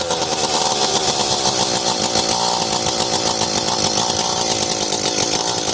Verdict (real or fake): real